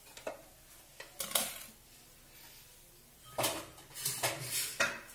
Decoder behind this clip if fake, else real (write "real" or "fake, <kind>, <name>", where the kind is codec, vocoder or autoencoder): real